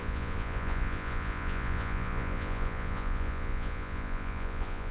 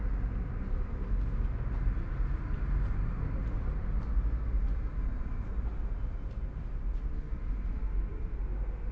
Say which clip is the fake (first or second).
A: first